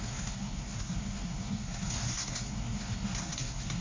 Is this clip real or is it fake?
fake